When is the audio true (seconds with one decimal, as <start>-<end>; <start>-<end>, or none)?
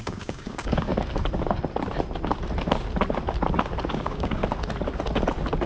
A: 0.9-3.9; 4.4-5.7